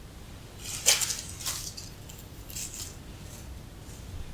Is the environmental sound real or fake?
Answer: real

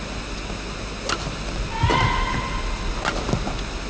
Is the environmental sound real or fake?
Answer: real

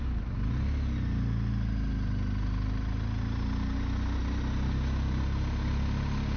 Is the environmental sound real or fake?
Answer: real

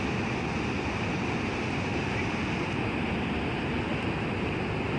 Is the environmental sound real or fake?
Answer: real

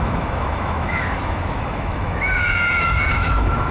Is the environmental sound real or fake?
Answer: fake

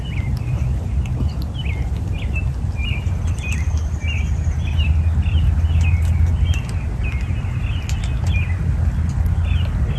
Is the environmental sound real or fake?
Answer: real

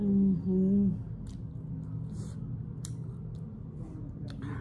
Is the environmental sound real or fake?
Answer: real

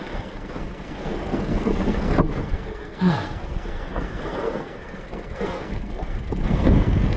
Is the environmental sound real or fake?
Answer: fake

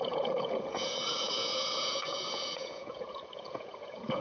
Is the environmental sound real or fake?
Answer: fake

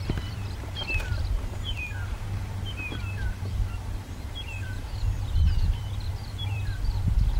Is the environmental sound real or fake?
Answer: fake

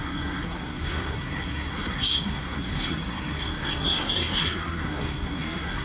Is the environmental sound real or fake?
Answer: fake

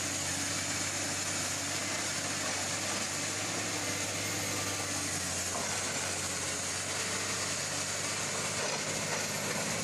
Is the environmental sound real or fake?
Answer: real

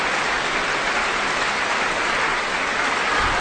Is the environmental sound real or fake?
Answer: real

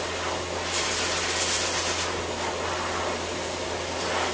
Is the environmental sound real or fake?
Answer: real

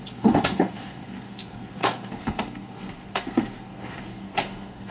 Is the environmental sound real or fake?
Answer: fake